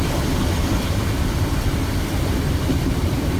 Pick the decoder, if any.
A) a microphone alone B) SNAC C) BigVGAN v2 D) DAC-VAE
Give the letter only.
C